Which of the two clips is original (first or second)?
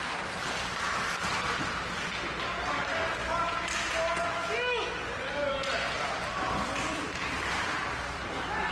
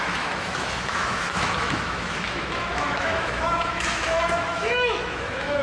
first